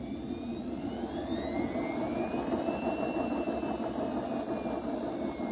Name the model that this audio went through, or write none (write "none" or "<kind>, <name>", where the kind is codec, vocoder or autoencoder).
none